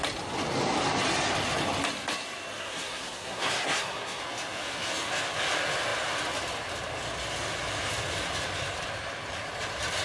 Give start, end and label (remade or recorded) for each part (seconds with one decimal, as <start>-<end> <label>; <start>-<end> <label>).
0.0-2.6 recorded; 2.6-4.2 remade; 4.2-10.0 recorded